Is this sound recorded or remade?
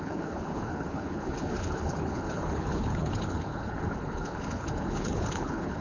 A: remade